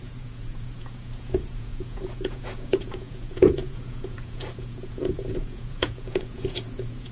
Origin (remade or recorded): remade